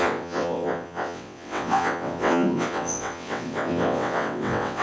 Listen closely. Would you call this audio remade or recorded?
remade